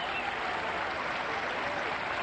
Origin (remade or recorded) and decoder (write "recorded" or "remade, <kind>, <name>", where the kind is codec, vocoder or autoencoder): recorded